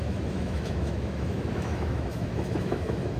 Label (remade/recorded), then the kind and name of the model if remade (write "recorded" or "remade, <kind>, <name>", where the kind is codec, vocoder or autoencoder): remade, autoencoder, DAC-VAE